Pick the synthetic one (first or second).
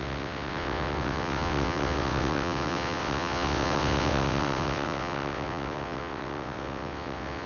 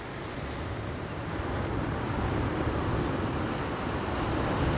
first